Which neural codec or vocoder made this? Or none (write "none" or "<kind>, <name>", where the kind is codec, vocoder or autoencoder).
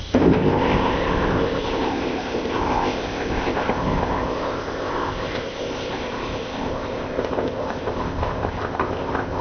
codec, ZipCodec